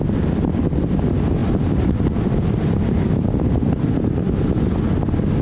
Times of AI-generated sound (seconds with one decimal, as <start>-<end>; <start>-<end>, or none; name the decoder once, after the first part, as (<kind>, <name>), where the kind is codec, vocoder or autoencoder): 1.4-4.6 (vocoder, BigVGAN v2)